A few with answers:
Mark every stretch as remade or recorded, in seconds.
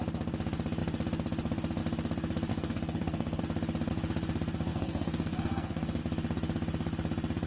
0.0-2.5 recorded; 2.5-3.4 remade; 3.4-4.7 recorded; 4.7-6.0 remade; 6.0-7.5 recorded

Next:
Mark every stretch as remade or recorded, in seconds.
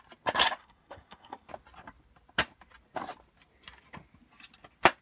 0.0-0.6 recorded; 0.6-1.5 remade; 1.5-5.0 recorded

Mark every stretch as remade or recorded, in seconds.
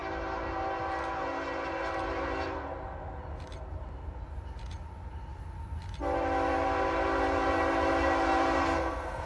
0.0-8.6 recorded; 8.6-9.3 remade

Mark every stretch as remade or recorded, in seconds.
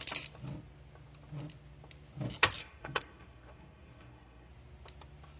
0.0-2.6 recorded; 2.6-4.5 remade; 4.5-5.4 recorded